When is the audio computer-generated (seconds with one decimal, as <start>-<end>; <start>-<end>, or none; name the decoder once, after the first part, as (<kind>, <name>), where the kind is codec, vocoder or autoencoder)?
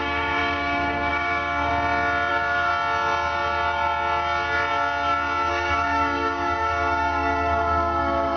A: 0.0-1.7 (codec, DAC); 2.3-2.7; 5.5-8.4